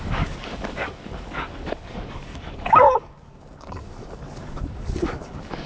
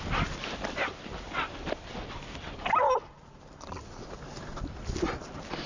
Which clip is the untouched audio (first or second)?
second